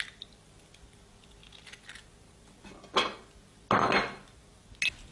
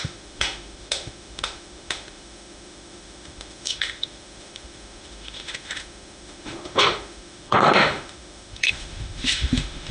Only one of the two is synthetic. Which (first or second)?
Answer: second